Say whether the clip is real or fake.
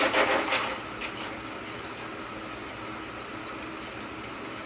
real